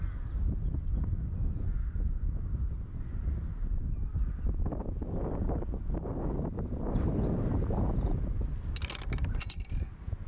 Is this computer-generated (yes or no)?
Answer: no